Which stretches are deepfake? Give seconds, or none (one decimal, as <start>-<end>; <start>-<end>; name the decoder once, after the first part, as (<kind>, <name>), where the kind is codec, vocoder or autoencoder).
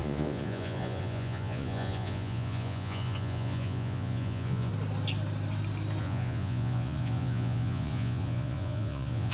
0.0-4.7 (vocoder, Vocos); 6.0-9.3